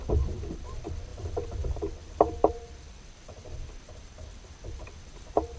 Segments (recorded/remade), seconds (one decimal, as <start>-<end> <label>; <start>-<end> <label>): 0.0-5.6 recorded